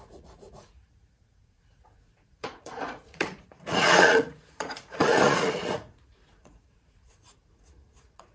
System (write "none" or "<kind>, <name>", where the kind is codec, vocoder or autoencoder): vocoder, Vocos